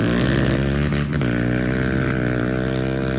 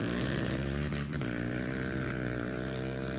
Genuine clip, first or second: first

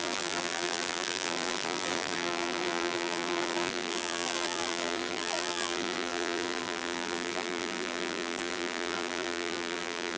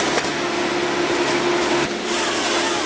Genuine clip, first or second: second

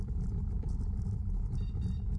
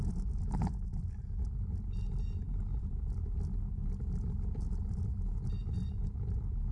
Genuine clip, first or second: second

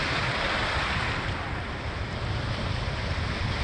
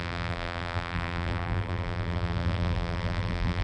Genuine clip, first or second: first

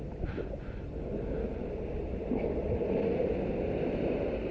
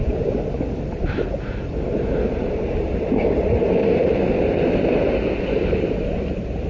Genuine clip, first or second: first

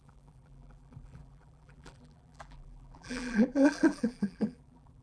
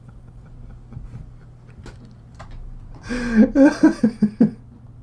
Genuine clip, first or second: second